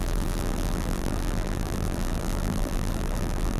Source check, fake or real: fake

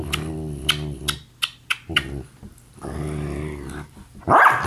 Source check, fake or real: fake